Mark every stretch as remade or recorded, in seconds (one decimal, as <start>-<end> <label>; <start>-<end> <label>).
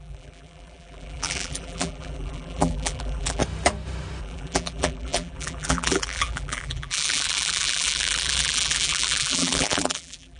0.0-3.4 remade; 3.4-4.2 recorded; 4.2-10.4 remade